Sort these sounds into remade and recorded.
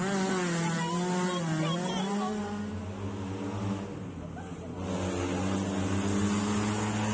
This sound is recorded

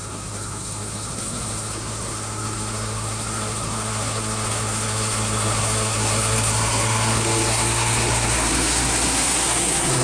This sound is remade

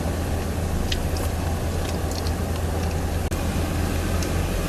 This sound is recorded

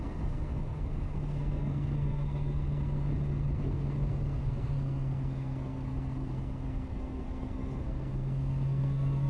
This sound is remade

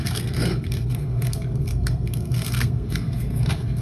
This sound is remade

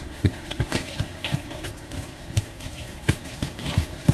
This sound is remade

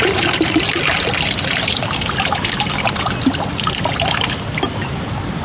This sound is recorded